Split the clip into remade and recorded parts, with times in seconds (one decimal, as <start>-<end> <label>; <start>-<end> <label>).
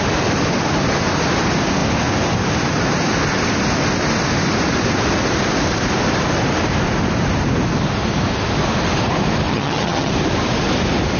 0.0-9.5 recorded; 9.5-10.1 remade; 10.1-11.2 recorded